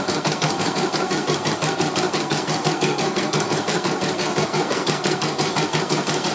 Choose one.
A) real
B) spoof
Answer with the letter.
B